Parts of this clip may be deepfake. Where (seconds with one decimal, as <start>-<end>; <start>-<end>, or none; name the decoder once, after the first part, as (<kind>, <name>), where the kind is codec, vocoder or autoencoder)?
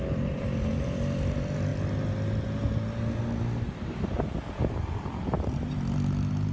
none